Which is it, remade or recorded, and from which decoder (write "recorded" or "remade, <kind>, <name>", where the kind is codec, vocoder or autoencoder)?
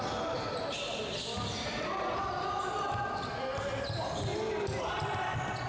recorded